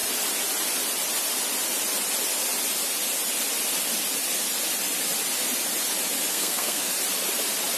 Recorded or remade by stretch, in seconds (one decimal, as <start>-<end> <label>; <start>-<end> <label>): 0.0-6.3 recorded; 6.3-6.9 remade; 6.9-7.8 recorded